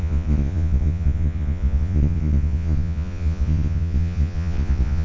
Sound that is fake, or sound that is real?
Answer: fake